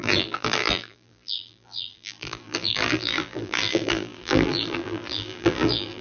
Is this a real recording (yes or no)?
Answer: no